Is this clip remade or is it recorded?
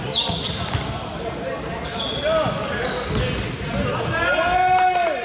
recorded